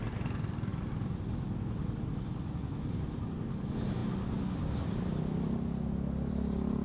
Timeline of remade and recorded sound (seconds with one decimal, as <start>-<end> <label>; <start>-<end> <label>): 0.0-6.8 recorded